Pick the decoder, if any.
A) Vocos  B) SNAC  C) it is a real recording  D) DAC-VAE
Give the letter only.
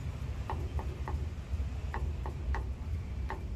C